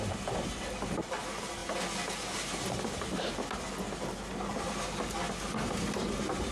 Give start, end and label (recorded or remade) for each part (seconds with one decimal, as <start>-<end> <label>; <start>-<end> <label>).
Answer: 0.0-6.5 recorded